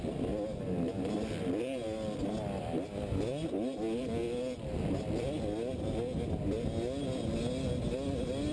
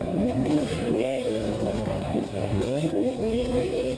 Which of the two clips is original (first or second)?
first